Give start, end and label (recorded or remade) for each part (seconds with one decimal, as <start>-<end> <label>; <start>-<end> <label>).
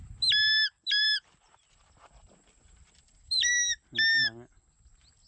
0.0-1.0 recorded; 1.0-3.5 remade; 3.5-5.3 recorded